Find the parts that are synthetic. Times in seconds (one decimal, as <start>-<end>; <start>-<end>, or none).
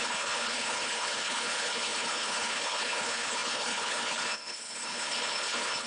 0.0-5.9